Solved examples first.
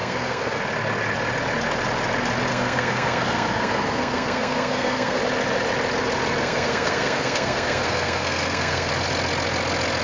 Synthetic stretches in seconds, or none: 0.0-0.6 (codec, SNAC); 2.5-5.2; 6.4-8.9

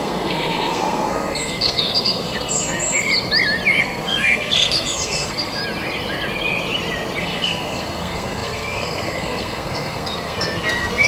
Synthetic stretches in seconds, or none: 0.0-3.1 (codec, SNAC); 3.8-5.6; 7.2-11.1

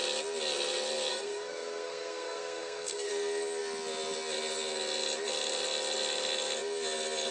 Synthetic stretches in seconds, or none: 1.1-3.1 (codec, SNAC)

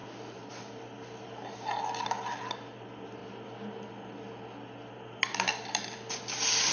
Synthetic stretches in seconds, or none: none

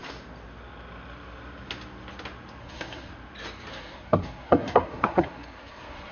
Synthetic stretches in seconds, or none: 2.6-3.1 (codec, SNAC); 3.7-6.1

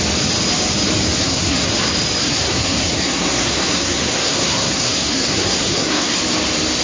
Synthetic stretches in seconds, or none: 1.2-1.7 (codec, SNAC); 2.2-6.2

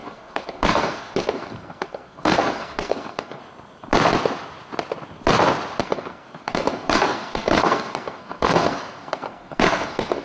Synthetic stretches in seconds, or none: 0.0-3.4 (codec, SNAC); 5.8-10.2

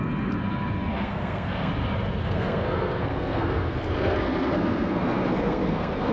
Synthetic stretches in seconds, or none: 0.9-1.7 (codec, SNAC); 2.2-6.1